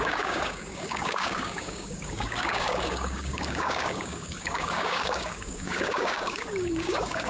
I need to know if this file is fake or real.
fake